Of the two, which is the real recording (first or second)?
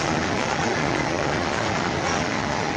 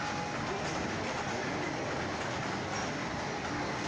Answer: second